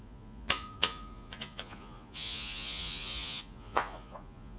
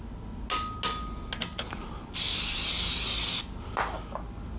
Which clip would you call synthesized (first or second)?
first